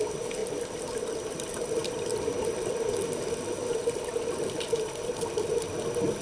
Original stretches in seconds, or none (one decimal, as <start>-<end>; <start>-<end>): 0.0-0.4; 1.3-3.8; 5.5-6.2